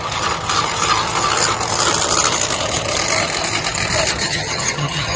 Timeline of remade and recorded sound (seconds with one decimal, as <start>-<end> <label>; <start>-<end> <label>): 0.0-4.2 recorded; 4.2-5.2 remade